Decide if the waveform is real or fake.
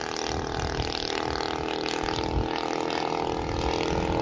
real